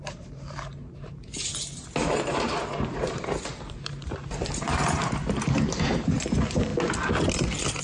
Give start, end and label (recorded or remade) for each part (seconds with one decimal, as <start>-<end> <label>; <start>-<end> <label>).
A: 0.0-6.7 remade; 6.7-7.8 recorded

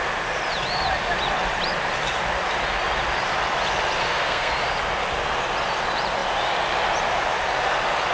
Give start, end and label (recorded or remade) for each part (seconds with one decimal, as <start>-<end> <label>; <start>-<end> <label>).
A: 0.0-4.0 recorded; 4.0-4.5 remade; 4.5-8.1 recorded

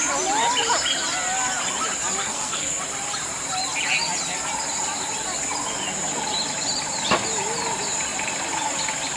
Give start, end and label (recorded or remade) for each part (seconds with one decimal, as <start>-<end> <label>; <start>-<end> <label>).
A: 0.0-2.2 recorded; 2.2-2.8 remade; 2.8-9.2 recorded

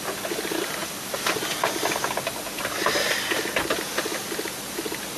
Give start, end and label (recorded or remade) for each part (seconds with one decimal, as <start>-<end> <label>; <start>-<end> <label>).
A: 0.0-5.2 recorded

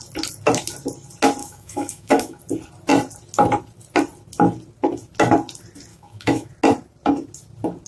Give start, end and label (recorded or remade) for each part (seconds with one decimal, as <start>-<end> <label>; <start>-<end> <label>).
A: 0.0-1.4 recorded; 1.4-2.4 remade; 2.4-5.9 recorded; 5.9-6.5 remade; 6.5-7.9 recorded

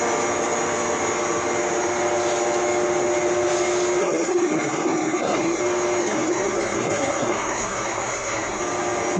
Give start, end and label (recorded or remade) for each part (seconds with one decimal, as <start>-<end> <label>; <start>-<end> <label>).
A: 0.0-4.0 recorded; 4.0-5.6 remade; 5.6-6.0 recorded; 6.0-8.6 remade; 8.6-9.2 recorded